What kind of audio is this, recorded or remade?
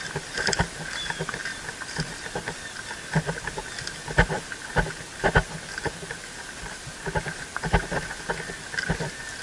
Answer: recorded